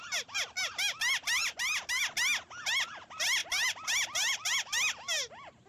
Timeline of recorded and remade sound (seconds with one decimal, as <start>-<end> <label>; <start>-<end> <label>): 0.0-1.4 recorded; 1.4-2.0 remade; 2.0-5.7 recorded